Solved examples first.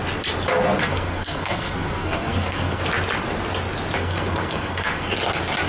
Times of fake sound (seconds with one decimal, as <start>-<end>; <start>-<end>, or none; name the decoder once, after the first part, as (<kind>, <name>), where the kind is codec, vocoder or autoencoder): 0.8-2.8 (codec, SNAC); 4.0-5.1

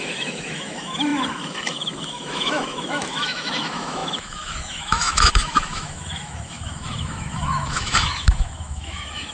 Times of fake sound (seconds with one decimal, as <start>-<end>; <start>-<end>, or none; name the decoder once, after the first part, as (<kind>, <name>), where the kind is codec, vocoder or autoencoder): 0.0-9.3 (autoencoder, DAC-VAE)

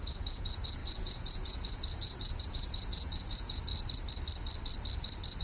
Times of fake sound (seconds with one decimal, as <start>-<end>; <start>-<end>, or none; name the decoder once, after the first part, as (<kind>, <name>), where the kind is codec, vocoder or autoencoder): 0.0-3.7 (vocoder, Vocos)